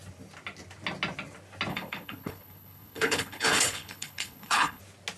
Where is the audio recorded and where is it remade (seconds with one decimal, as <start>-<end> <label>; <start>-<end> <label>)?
0.0-1.7 recorded; 1.7-4.8 remade; 4.8-5.2 recorded